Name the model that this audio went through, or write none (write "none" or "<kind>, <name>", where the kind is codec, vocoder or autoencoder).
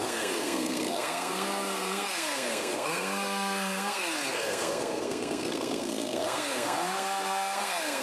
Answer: codec, SNAC